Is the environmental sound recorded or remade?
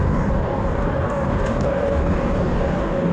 remade